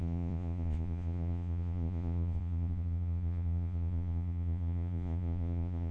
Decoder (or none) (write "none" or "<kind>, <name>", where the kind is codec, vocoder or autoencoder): vocoder, Vocos